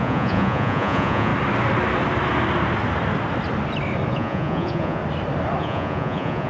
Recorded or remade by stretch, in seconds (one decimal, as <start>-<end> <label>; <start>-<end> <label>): 0.0-1.3 remade; 1.3-4.1 recorded; 4.1-5.0 remade; 5.0-5.6 recorded; 5.6-6.5 remade